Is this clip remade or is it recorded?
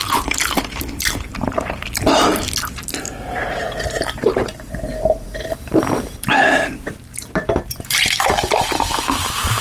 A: remade